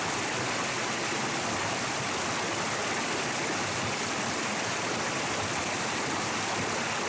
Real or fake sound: real